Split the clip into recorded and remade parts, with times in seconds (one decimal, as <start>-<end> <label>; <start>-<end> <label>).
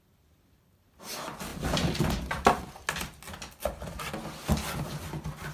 0.0-5.5 recorded